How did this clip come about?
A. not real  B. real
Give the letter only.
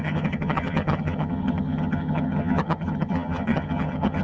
A